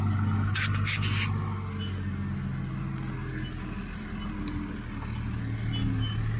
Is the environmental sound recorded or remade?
recorded